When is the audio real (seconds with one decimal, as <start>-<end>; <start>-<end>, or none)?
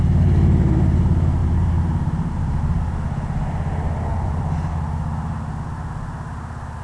0.0-1.4; 2.6-4.1; 4.7-6.8